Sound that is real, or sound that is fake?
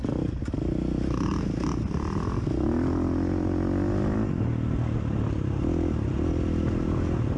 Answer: real